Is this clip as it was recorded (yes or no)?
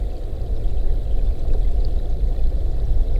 yes